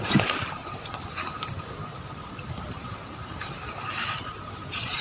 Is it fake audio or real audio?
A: fake